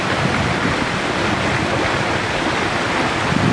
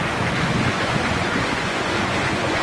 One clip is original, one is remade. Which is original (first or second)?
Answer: first